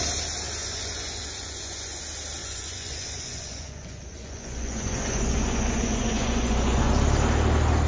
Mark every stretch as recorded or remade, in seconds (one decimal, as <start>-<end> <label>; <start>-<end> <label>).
0.0-0.6 recorded; 0.6-2.0 remade; 2.0-2.4 recorded; 2.4-6.9 remade; 6.9-7.9 recorded